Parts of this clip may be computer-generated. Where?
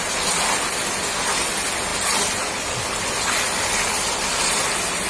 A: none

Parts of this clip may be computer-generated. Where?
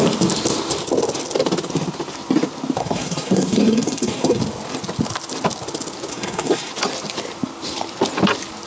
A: 2.8-4.4 (codec, SNAC); 6.1-6.7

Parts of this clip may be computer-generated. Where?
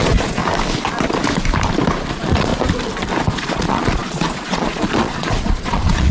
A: 0.0-0.4 (vocoder, Vocos); 2.1-2.5; 3.3-6.1